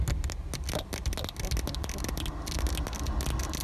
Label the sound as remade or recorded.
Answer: recorded